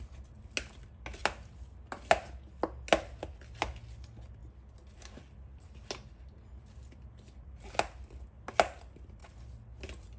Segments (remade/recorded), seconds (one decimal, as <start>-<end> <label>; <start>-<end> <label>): 0.0-10.2 recorded